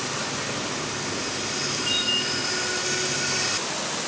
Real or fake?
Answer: real